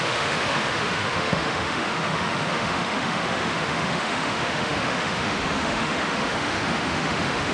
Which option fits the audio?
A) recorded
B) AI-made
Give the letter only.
B